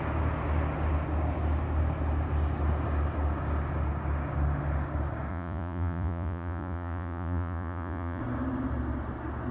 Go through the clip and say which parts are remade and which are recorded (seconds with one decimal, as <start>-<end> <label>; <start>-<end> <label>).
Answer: 0.0-5.3 recorded; 5.3-8.2 remade; 8.2-9.5 recorded